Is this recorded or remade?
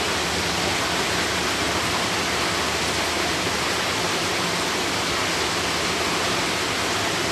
recorded